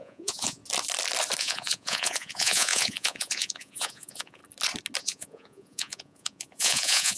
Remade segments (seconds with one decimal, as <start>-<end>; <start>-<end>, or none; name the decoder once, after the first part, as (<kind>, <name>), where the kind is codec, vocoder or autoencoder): 0.0-0.6 (vocoder, Vocos); 1.4-4.4; 5.0-7.2